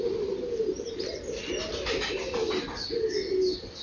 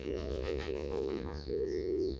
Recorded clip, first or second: first